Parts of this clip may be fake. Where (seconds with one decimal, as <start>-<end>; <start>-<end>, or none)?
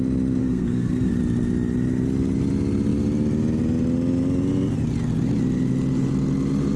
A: 0.4-1.1